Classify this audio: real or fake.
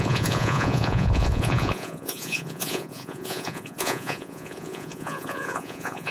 fake